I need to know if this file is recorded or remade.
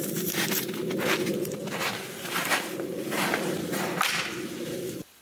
recorded